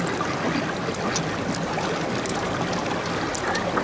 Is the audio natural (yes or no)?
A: yes